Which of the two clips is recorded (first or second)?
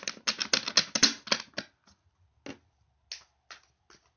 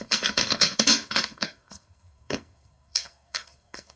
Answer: first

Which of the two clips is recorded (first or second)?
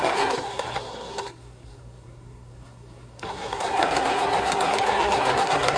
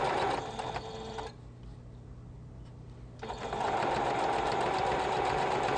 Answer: second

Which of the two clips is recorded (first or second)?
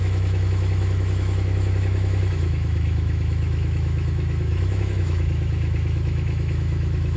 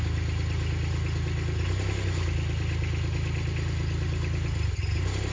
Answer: second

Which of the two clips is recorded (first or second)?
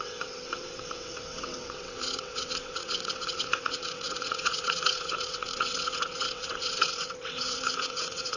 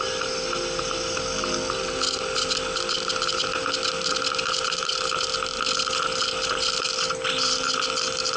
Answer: second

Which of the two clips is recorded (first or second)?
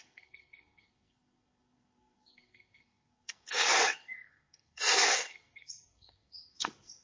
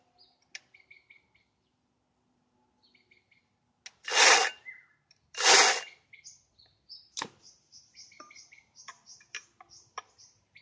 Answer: second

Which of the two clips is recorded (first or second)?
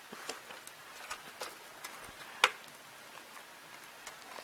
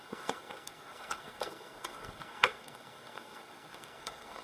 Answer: first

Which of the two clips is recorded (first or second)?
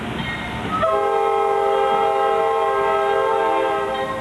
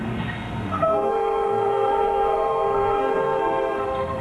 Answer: first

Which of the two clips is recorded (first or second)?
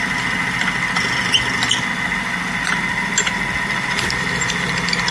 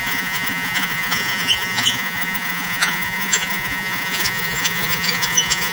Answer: first